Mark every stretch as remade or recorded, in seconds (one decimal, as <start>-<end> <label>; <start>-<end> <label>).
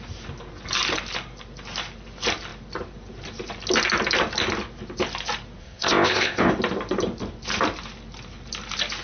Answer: 0.0-5.6 recorded; 5.6-6.5 remade; 6.5-9.0 recorded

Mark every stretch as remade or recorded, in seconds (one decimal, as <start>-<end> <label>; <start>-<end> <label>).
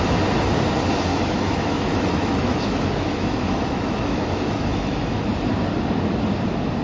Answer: 0.0-1.1 recorded; 1.1-5.2 remade; 5.2-6.8 recorded